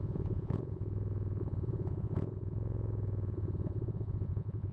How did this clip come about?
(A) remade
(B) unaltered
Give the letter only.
A